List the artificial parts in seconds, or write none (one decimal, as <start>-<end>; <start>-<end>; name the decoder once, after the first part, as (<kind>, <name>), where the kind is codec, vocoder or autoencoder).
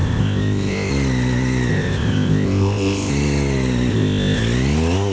0.0-0.9 (codec, ZipCodec); 1.7-3.1; 3.9-4.4